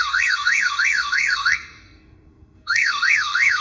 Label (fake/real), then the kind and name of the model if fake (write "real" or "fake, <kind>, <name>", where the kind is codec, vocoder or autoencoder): fake, codec, SNAC